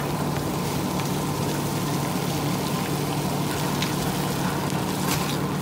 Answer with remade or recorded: recorded